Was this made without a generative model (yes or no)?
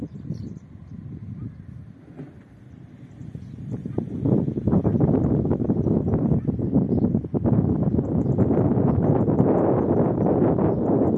yes